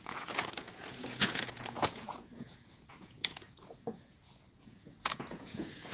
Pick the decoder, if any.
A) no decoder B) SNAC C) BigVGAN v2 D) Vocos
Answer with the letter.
D